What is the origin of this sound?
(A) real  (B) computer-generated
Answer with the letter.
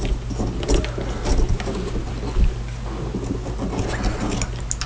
A